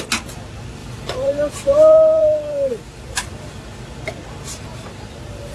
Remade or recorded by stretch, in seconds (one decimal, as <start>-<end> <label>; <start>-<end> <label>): 0.0-0.8 recorded; 0.8-3.3 remade; 3.3-5.5 recorded